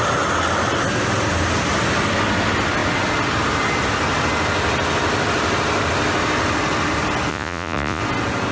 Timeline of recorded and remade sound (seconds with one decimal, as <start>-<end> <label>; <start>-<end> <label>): 0.0-7.3 recorded; 7.3-8.0 remade; 8.0-8.5 recorded